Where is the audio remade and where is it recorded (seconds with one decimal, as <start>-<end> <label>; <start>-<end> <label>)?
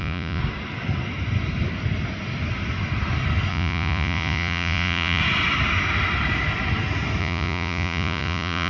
0.0-0.4 remade; 0.4-3.5 recorded; 3.5-5.2 remade; 5.2-7.2 recorded; 7.2-8.7 remade